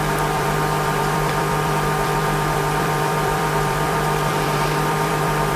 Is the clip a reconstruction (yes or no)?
yes